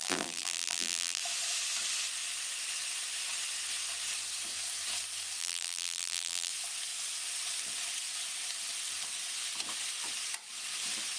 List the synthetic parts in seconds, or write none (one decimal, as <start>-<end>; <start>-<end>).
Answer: 0.0-1.2; 5.4-6.5